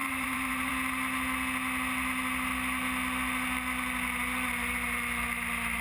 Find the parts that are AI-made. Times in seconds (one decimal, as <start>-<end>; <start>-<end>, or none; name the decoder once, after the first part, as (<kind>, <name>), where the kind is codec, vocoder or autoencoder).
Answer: 0.0-0.7 (vocoder, BigVGAN v2)